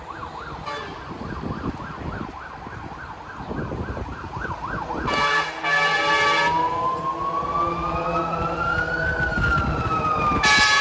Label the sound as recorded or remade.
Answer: recorded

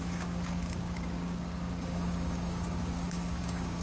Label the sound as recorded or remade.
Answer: remade